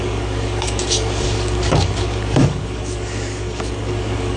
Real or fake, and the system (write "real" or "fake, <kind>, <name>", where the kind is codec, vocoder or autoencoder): fake, codec, DAC